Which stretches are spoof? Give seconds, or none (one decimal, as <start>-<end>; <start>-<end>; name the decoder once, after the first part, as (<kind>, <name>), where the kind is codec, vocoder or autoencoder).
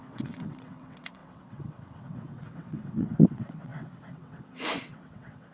0.0-5.5 (vocoder, WaveNeXt)